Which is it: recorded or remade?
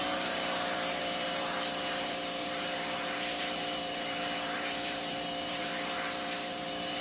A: remade